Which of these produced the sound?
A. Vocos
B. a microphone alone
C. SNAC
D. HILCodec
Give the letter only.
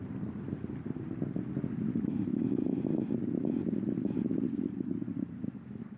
B